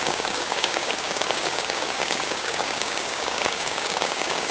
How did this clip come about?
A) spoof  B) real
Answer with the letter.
A